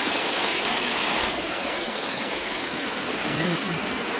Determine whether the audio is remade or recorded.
remade